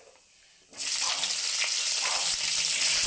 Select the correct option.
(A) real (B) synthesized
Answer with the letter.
A